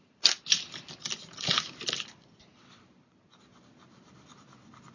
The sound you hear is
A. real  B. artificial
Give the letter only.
A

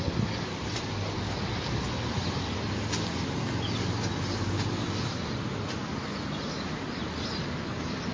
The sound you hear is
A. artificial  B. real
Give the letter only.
B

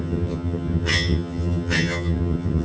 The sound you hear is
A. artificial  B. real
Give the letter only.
A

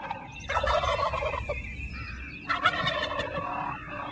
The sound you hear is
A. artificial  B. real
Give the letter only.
B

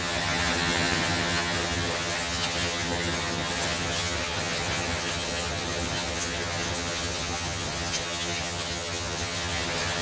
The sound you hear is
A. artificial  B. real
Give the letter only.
A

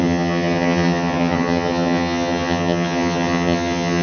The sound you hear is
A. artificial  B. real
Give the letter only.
A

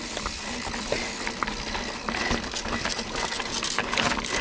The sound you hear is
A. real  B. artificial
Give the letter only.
A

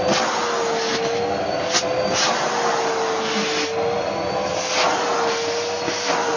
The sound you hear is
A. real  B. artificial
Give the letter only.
A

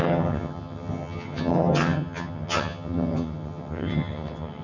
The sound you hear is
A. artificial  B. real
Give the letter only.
A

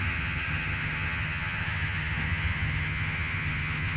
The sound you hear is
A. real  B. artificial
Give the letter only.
B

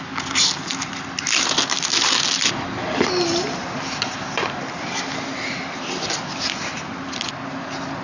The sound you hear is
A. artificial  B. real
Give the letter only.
B